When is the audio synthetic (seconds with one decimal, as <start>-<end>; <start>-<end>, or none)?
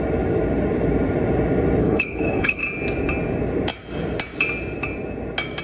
1.8-2.6